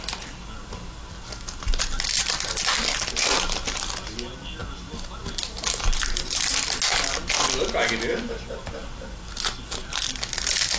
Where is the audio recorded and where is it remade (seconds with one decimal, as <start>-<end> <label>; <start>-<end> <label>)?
0.0-10.8 recorded